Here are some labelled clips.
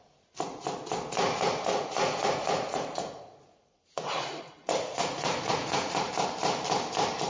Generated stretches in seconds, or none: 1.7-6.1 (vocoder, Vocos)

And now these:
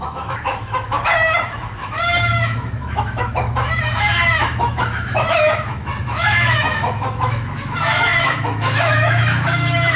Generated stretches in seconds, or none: 0.0-10.0 (autoencoder, DAC-VAE)

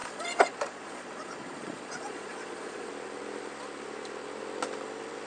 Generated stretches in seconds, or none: 0.0-2.9 (vocoder, Vocos)

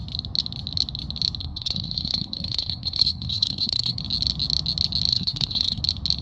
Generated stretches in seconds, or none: 1.4-4.0 (codec, SNAC); 5.1-5.8

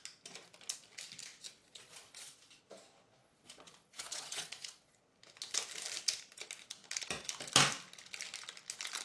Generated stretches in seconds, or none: 1.6-2.6 (vocoder, Vocos); 3.2-5.0